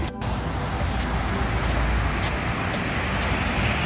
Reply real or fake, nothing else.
real